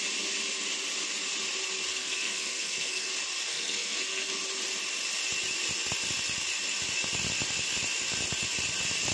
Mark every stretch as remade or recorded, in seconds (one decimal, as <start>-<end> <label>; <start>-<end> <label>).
0.0-1.9 recorded; 1.9-3.1 remade; 3.1-3.5 recorded; 3.5-4.3 remade; 4.3-9.1 recorded